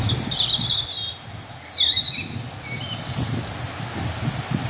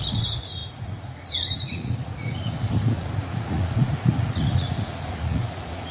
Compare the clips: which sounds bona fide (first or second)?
first